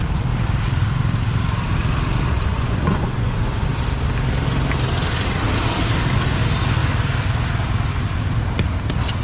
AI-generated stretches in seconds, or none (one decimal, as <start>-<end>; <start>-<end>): 2.5-3.7